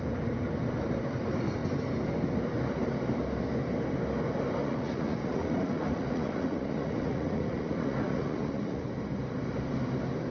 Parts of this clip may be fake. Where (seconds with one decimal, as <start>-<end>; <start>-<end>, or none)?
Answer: 4.6-8.8